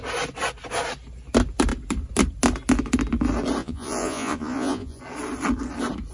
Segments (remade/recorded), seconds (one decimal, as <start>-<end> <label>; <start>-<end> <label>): 0.0-3.6 recorded; 3.6-5.0 remade; 5.0-6.1 recorded